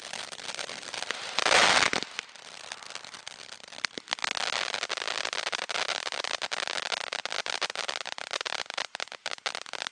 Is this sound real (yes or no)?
yes